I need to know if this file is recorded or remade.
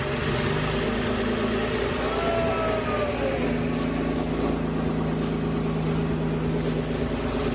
recorded